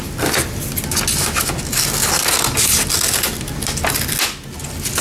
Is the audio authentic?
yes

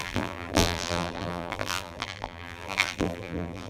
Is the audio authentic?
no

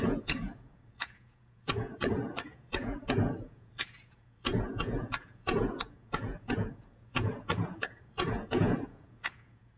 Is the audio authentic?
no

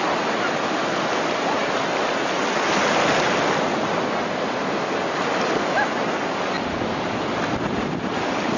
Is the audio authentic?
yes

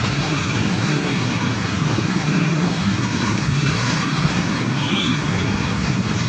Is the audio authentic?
no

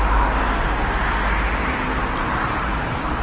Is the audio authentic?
yes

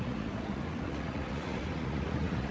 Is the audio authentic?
no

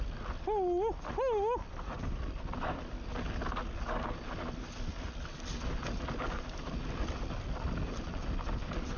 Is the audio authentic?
yes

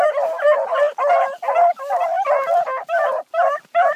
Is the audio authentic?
yes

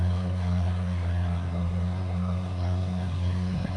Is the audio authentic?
no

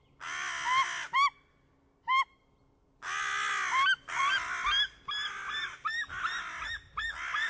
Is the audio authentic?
yes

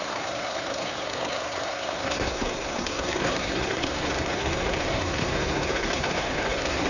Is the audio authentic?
no